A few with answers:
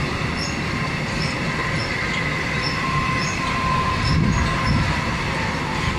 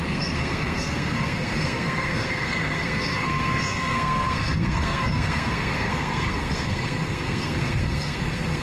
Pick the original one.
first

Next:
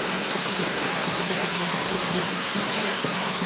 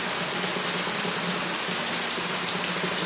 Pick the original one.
second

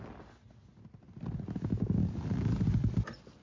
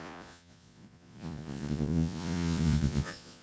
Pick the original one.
first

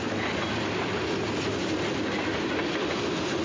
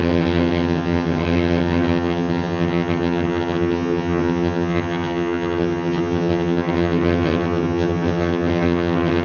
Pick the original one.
first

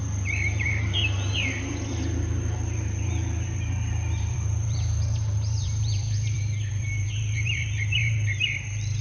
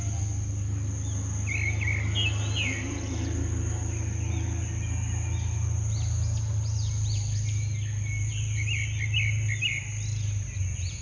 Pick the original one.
second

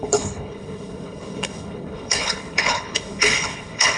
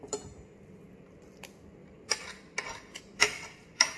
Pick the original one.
second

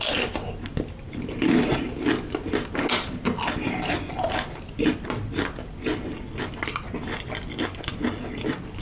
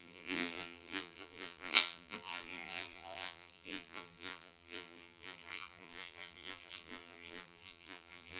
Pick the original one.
first